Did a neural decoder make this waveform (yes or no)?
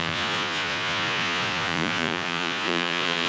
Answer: yes